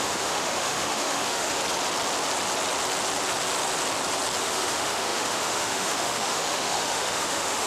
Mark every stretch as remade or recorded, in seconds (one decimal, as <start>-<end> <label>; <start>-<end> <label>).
0.0-1.6 remade; 1.6-4.4 recorded; 4.4-7.7 remade